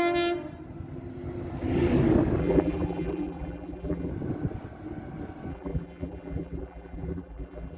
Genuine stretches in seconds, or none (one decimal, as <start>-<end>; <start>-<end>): 0.0-2.4; 4.1-5.5